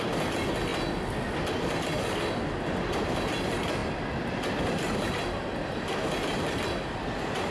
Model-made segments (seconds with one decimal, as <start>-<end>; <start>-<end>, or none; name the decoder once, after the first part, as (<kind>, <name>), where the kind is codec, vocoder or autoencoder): none